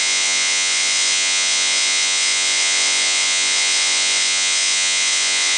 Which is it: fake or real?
fake